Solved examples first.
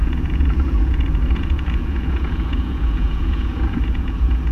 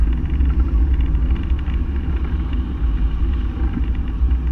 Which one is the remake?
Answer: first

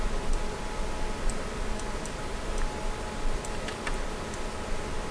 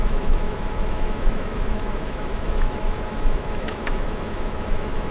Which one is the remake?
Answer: second